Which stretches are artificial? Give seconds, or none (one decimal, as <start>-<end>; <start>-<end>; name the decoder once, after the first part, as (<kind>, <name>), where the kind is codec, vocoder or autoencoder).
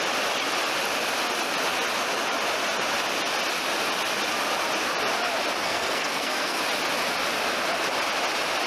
5.6-6.6 (codec, SNAC)